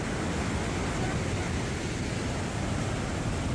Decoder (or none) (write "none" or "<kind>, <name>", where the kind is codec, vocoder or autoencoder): none